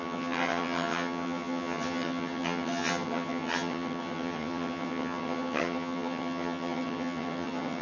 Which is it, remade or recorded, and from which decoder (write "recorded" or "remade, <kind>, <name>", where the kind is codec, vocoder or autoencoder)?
remade, vocoder, HiFi-GAN